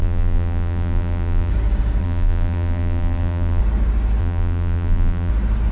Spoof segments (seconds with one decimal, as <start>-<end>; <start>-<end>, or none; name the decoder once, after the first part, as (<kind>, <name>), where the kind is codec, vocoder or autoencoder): 0.0-1.5 (vocoder, BigVGAN v2); 2.0-3.6; 4.2-5.3